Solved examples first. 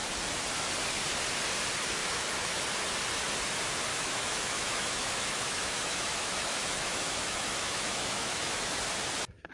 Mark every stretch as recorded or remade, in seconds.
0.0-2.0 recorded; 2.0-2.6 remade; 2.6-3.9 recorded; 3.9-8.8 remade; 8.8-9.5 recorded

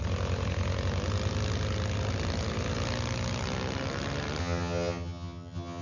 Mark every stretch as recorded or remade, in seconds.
0.0-4.4 recorded; 4.4-5.8 remade

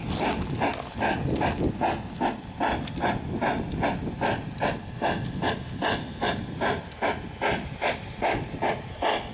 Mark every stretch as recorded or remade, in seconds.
0.0-9.3 recorded

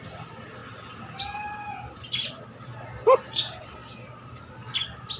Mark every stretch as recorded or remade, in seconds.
0.0-5.2 recorded

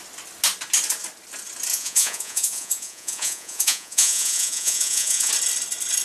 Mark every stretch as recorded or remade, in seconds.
0.0-1.7 recorded; 1.7-5.3 remade; 5.3-6.0 recorded

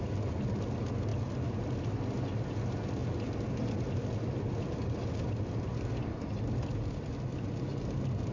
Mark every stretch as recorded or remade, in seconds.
0.0-8.3 recorded

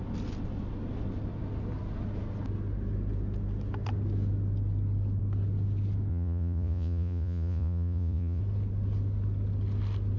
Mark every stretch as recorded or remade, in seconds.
0.0-6.1 recorded; 6.1-8.4 remade; 8.4-10.2 recorded

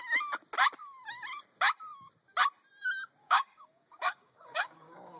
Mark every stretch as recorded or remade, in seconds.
0.0-3.2 recorded; 3.2-5.2 remade